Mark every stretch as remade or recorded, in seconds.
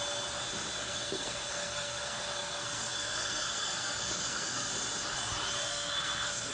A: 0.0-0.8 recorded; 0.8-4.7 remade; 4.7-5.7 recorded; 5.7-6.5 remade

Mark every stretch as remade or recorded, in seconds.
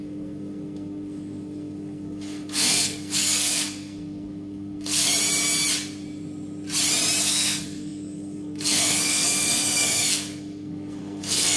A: 0.0-5.1 remade; 5.1-7.2 recorded; 7.2-11.6 remade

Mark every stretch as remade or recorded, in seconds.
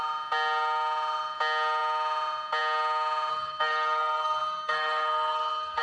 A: 0.0-3.3 recorded; 3.3-5.8 remade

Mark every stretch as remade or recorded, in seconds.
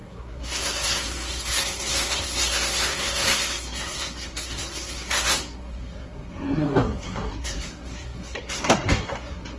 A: 0.0-9.6 remade